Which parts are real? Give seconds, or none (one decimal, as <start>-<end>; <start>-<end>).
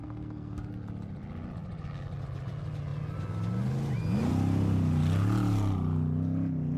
0.7-6.8